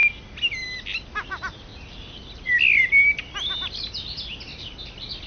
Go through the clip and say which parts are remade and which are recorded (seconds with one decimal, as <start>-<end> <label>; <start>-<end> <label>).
0.0-1.1 recorded; 1.1-1.7 remade; 1.7-5.3 recorded